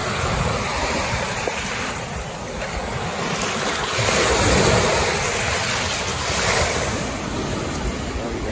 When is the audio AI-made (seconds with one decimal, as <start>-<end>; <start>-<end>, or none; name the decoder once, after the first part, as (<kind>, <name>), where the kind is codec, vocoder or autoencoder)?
0.0-2.3 (vocoder, BigVGAN v2); 6.1-6.7